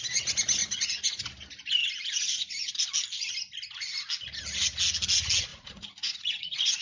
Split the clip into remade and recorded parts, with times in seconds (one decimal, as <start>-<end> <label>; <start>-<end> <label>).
0.0-0.6 recorded; 0.6-1.2 remade; 1.2-5.5 recorded; 5.5-6.8 remade